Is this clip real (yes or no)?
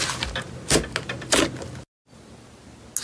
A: yes